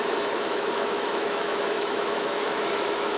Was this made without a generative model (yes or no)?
no